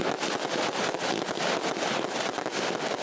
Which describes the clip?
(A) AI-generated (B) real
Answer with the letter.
B